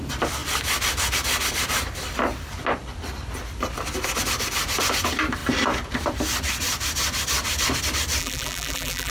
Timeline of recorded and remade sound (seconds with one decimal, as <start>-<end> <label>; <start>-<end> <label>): 0.0-8.2 recorded; 8.2-9.1 remade